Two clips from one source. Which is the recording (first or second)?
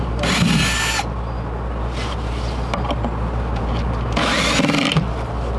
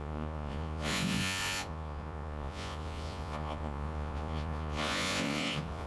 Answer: first